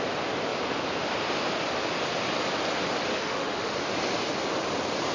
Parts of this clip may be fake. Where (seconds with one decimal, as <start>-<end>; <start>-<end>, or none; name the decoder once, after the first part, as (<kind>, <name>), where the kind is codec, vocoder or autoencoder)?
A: 3.1-3.7 (autoencoder, DAC-VAE)